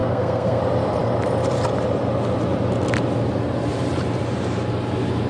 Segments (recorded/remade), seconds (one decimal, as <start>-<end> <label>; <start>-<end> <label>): 0.0-0.6 remade; 0.6-5.3 recorded